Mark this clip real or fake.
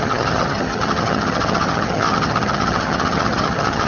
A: fake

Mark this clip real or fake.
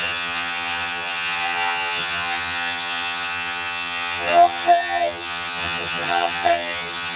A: fake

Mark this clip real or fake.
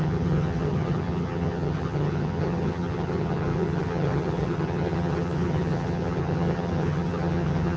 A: fake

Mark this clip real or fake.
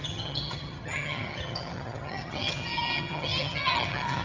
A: fake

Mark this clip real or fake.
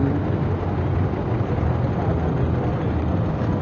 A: real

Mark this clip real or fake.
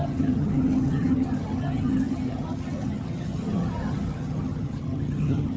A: fake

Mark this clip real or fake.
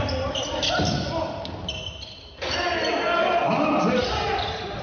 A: real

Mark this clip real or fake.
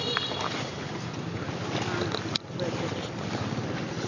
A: real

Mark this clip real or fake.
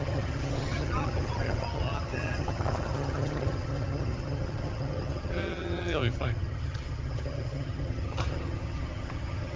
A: fake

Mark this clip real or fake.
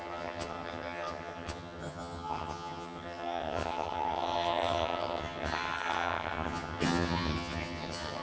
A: fake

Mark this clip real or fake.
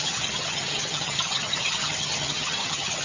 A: fake